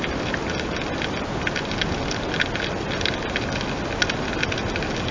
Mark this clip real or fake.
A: real